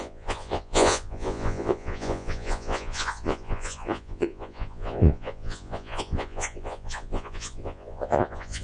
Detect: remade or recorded remade